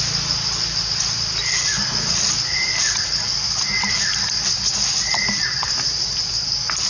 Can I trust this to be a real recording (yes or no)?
yes